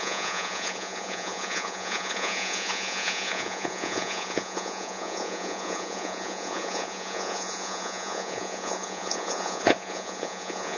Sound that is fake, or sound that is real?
fake